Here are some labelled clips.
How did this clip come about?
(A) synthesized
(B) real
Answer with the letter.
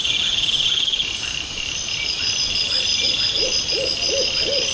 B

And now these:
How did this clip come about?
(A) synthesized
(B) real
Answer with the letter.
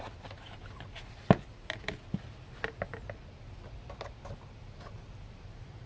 B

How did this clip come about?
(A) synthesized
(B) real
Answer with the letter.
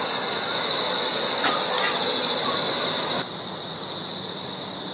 B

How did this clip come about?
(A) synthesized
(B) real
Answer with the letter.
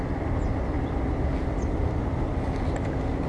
B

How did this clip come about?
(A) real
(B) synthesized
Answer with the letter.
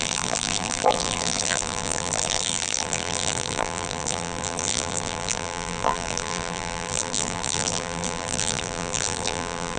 B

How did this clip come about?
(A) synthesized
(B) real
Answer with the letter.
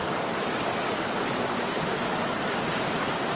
B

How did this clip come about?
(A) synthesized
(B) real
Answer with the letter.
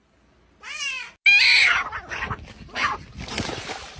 B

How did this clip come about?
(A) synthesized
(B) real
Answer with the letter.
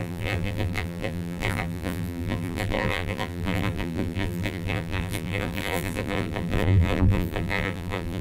A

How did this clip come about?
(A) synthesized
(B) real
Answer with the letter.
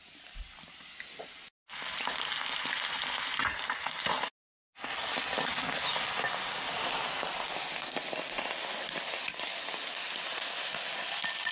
B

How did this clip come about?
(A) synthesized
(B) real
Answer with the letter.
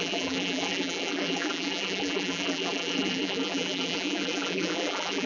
A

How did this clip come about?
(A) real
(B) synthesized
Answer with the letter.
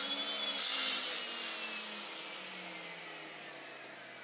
A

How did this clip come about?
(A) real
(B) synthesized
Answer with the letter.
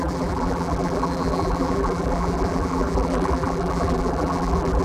B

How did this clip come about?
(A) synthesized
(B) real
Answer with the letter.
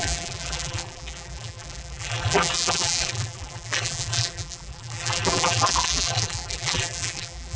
A